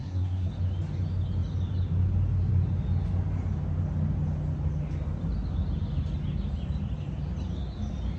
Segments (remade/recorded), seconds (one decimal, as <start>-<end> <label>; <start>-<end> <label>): 0.0-0.5 remade; 0.5-8.2 recorded

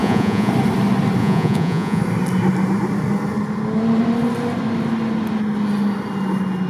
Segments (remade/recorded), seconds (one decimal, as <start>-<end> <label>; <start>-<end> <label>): 0.0-0.5 remade; 0.5-1.2 recorded; 1.2-2.0 remade; 2.0-6.7 recorded

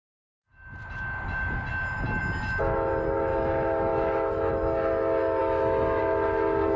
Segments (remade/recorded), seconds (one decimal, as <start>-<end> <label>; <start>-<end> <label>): 0.0-3.3 recorded; 3.3-4.5 remade; 4.5-5.4 recorded; 5.4-6.0 remade; 6.0-6.8 recorded